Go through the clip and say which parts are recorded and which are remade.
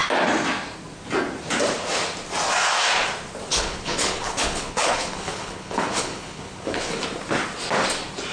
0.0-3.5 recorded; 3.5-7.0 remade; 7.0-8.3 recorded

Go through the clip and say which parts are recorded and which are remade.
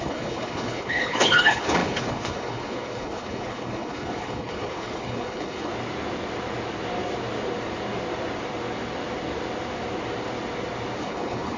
0.0-5.7 remade; 5.7-11.0 recorded; 11.0-11.6 remade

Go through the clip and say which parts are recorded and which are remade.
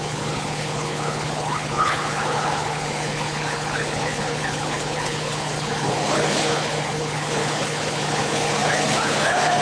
0.0-9.6 remade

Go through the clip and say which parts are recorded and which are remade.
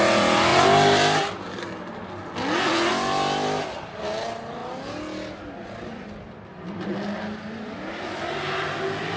0.0-9.2 recorded